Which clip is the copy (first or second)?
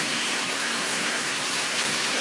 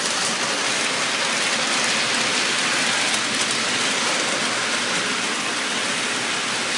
first